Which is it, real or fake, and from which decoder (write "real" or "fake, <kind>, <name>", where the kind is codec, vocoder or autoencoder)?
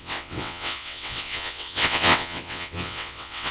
fake, vocoder, WaveNeXt